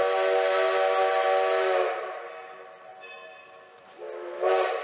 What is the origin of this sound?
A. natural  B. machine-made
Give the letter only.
A